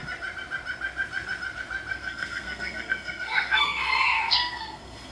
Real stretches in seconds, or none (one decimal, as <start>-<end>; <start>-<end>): 0.0-1.9